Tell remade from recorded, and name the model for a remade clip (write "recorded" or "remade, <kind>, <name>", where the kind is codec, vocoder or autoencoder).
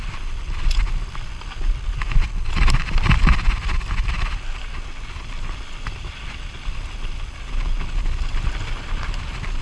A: recorded